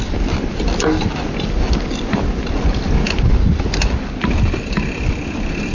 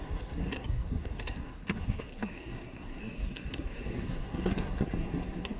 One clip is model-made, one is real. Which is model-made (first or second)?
second